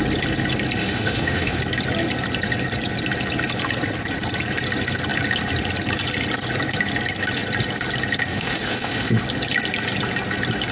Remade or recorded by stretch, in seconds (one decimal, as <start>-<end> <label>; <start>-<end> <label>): 0.0-0.8 recorded; 0.8-1.6 remade; 1.6-8.3 recorded; 8.3-9.2 remade; 9.2-10.7 recorded